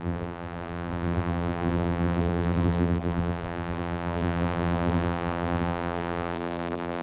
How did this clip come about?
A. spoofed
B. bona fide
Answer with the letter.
A